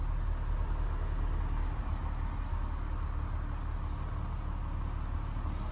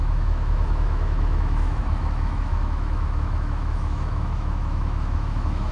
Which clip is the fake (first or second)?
second